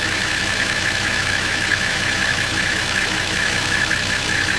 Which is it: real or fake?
fake